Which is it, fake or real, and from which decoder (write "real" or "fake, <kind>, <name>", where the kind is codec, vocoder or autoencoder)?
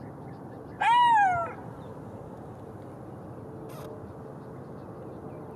real